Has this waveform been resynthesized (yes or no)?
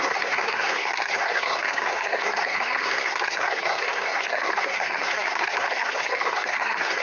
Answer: yes